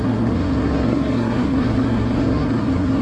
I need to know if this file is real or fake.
fake